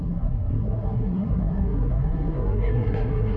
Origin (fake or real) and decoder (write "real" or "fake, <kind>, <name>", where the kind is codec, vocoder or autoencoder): fake, codec, SNAC